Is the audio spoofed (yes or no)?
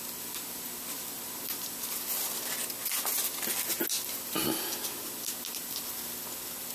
no